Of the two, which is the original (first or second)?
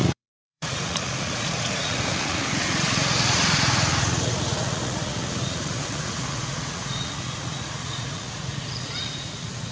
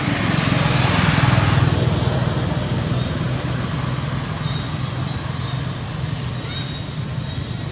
second